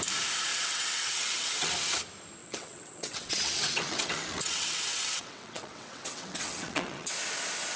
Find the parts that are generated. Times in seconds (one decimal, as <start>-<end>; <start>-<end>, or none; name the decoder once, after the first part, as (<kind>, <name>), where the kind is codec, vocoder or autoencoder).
0.5-1.7 (vocoder, WaveNeXt); 2.4-7.1